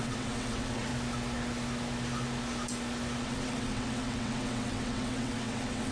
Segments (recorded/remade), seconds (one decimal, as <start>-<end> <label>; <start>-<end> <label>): 0.0-0.9 remade; 0.9-3.2 recorded; 3.2-5.9 remade